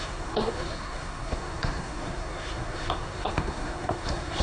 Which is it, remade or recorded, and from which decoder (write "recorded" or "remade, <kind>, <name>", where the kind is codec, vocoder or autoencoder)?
remade, codec, SNAC